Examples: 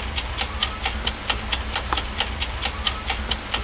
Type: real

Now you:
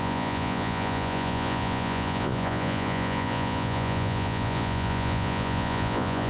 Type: fake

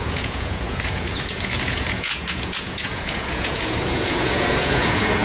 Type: fake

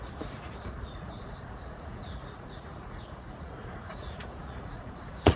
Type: fake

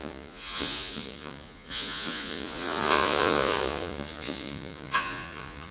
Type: fake